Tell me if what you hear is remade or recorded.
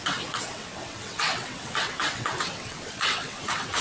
remade